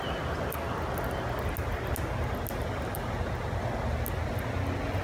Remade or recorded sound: recorded